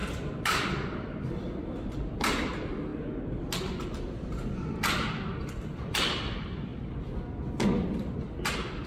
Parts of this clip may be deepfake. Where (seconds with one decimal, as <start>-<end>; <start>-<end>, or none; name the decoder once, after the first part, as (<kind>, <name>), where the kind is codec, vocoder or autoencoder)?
none